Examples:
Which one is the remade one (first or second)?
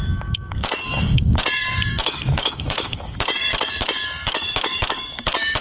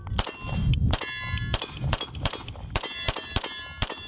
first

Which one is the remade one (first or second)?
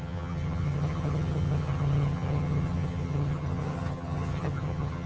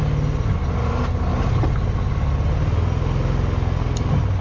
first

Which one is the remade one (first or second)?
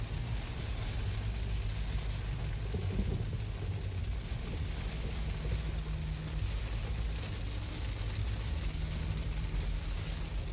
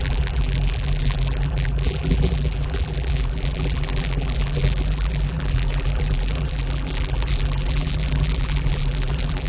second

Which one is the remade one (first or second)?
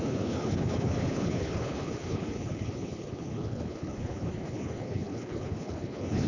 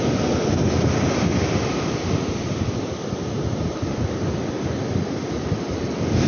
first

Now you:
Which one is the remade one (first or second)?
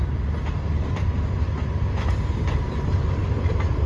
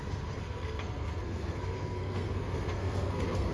second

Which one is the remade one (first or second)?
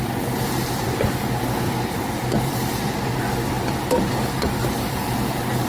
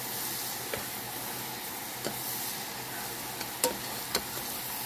first